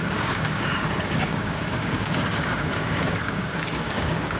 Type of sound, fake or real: fake